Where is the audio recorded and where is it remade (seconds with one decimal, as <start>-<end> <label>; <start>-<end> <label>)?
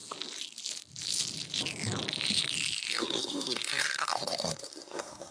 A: 0.0-2.9 recorded; 2.9-5.3 remade